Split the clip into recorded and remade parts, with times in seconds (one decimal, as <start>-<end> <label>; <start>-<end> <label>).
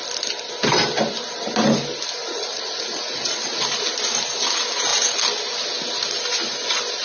0.0-2.2 recorded; 2.2-3.6 remade; 3.6-7.0 recorded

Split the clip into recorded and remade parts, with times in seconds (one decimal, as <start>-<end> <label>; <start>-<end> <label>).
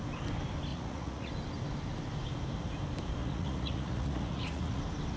0.0-0.7 recorded; 0.7-1.3 remade; 1.3-3.2 recorded; 3.2-4.8 remade; 4.8-5.2 recorded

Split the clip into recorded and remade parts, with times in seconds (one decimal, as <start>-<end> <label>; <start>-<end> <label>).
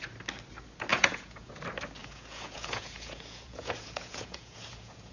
0.0-0.9 recorded; 0.9-1.5 remade; 1.5-2.0 recorded; 2.0-5.1 remade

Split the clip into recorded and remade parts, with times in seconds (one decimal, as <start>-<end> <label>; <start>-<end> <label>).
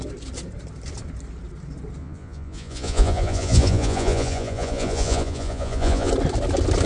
0.0-2.0 recorded; 2.0-6.1 remade; 6.1-6.9 recorded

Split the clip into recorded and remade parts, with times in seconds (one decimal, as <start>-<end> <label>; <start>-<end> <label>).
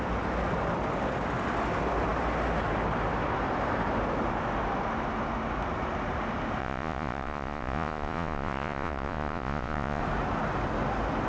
0.0-6.6 recorded; 6.6-10.0 remade; 10.0-11.3 recorded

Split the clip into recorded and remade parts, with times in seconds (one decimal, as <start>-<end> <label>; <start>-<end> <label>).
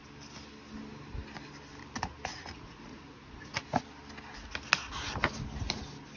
0.0-2.3 recorded; 2.3-3.6 remade; 3.6-6.2 recorded